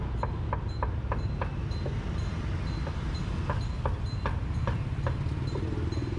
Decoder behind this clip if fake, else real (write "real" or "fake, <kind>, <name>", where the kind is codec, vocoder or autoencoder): real